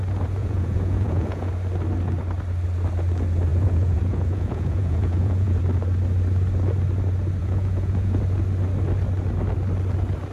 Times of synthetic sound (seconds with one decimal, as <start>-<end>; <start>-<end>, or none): 0.4-1.5; 3.5-5.6; 7.4-8.2